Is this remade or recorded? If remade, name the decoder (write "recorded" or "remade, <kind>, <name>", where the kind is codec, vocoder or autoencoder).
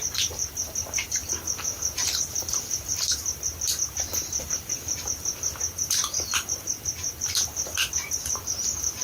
remade, vocoder, BigVGAN v2